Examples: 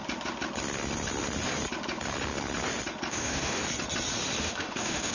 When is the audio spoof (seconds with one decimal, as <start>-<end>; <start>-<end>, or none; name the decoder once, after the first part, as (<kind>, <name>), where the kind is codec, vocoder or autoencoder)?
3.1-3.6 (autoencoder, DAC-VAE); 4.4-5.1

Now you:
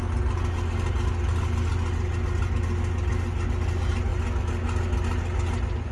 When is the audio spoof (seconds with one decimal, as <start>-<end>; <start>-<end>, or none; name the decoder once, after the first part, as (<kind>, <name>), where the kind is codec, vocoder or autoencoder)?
none

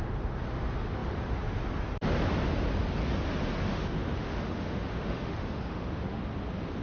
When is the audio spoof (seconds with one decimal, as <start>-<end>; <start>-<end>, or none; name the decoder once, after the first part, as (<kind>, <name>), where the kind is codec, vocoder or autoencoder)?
3.7-6.2 (autoencoder, DAC-VAE)

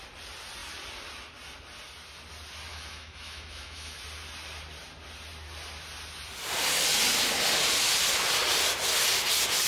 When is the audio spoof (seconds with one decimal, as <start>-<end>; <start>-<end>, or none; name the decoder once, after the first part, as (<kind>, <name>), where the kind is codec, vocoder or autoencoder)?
2.7-4.0 (autoencoder, DAC-VAE)

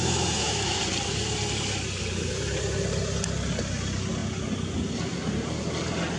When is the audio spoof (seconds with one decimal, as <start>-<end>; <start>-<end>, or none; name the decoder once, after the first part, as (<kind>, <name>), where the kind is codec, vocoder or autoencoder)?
0.0-0.8 (autoencoder, DAC-VAE)